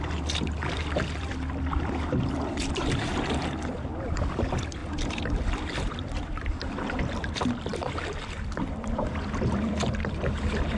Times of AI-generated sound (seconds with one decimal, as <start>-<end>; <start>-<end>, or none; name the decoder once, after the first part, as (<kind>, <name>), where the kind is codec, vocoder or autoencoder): 0.0-4.8 (vocoder, BigVGAN v2); 5.4-7.7; 8.3-10.8